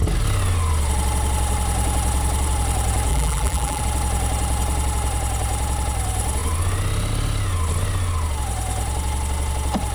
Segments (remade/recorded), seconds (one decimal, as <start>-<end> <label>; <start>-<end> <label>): 0.0-3.1 recorded; 3.1-3.8 remade; 3.8-9.9 recorded